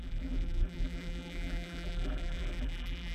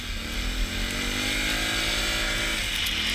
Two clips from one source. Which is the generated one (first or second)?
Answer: first